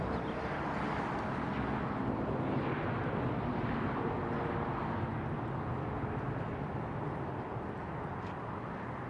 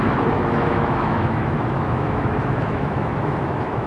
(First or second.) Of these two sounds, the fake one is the second